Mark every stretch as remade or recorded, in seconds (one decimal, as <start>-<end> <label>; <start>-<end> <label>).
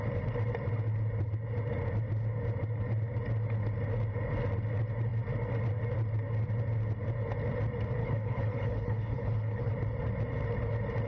0.0-8.0 recorded; 8.0-9.7 remade; 9.7-11.1 recorded